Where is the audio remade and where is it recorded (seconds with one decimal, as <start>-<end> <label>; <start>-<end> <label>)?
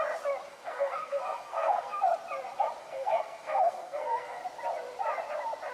0.0-0.5 recorded; 0.5-2.0 remade; 2.0-2.8 recorded; 2.8-4.4 remade; 4.4-5.7 recorded